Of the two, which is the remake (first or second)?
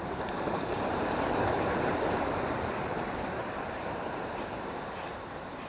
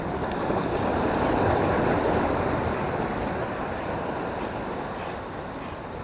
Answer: first